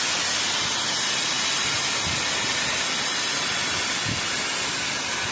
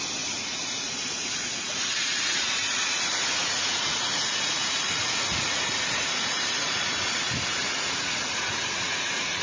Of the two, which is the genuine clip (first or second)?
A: first